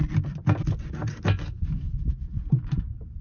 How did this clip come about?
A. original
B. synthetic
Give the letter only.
A